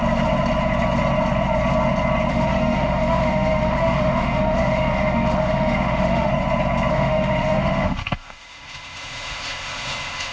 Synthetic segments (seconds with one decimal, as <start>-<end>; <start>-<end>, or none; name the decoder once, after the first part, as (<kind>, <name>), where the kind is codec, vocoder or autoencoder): 2.3-6.3 (autoencoder, DAC-VAE); 6.9-10.3